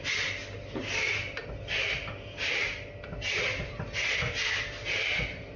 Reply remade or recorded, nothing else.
recorded